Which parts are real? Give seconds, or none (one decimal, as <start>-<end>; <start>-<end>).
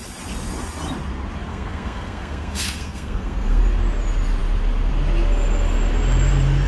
0.0-1.5; 3.6-6.7